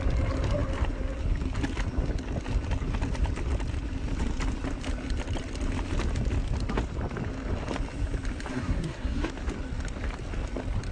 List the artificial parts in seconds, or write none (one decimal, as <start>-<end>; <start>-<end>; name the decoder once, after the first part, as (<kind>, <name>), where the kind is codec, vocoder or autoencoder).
8.5-9.3 (codec, SNAC)